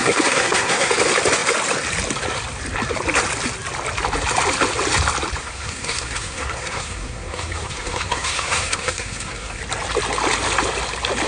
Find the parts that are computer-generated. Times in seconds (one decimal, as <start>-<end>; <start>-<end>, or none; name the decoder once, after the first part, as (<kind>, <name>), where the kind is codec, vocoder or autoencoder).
0.0-0.9 (codec, SNAC); 5.4-9.6